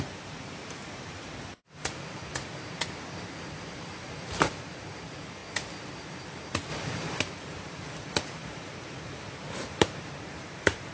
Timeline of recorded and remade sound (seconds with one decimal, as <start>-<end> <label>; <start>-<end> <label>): 0.0-2.3 remade; 2.3-3.6 recorded; 3.6-5.4 remade; 5.4-6.2 recorded; 6.2-10.9 remade